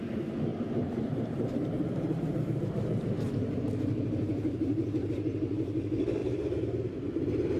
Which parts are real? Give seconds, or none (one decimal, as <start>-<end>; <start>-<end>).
0.0-0.5; 5.1-7.6